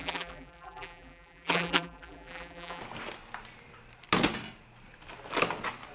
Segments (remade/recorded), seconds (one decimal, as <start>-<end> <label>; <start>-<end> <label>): 0.0-2.8 remade; 2.8-5.9 recorded